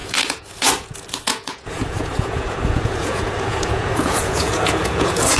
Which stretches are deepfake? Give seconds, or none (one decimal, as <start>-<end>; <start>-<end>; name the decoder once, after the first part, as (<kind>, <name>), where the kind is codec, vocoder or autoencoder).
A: 0.0-5.4 (vocoder, Vocos)

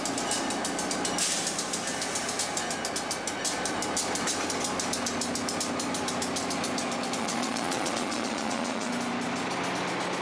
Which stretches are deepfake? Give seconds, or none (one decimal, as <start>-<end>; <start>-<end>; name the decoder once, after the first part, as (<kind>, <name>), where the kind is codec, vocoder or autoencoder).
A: 7.2-8.9 (vocoder, Vocos)